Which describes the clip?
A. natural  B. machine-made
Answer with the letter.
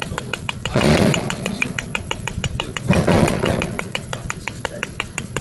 B